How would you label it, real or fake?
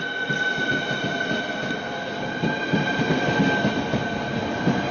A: real